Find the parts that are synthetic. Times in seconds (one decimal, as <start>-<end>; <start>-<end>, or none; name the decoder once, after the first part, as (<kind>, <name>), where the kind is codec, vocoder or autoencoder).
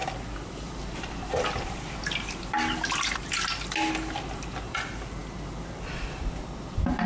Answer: none